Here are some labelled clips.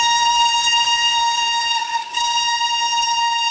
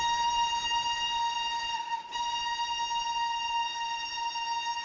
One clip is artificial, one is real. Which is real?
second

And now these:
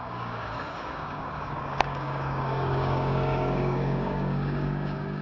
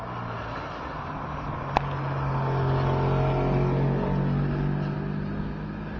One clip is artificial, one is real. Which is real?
second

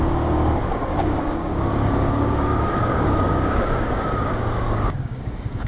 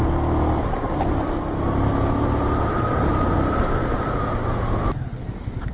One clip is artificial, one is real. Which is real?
second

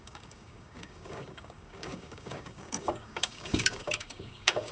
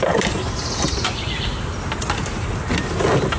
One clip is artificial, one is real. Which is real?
second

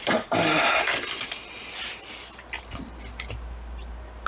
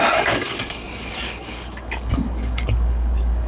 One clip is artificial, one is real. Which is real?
first